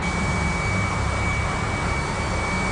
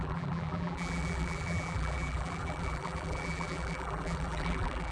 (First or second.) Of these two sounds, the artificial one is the second